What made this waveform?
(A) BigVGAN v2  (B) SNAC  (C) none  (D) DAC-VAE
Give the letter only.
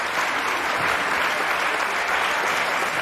C